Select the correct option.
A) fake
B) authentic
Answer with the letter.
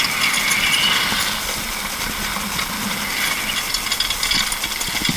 B